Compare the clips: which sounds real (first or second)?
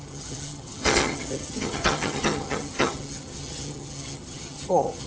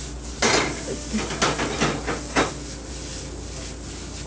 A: second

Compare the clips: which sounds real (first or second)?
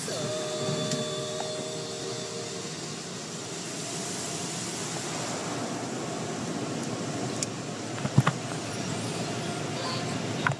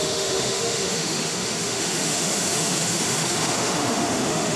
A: first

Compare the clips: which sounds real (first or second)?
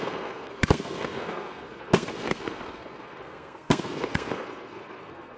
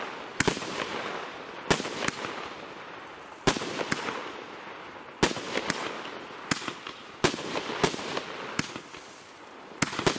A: second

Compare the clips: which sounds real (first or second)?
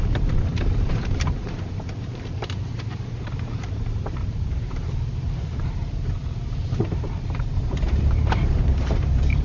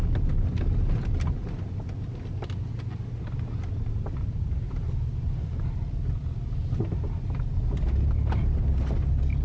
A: second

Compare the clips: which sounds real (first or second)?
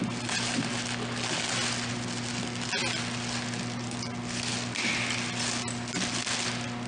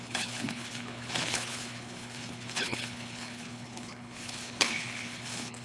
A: first